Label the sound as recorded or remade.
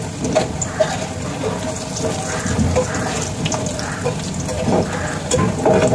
recorded